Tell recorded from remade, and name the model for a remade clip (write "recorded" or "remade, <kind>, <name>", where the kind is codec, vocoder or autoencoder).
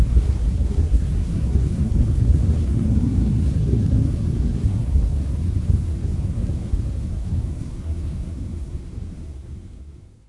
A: remade, codec, SNAC